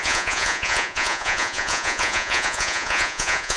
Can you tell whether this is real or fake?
fake